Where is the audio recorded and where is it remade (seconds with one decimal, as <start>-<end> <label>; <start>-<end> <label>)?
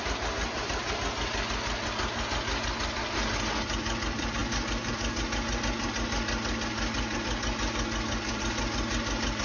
0.0-9.4 recorded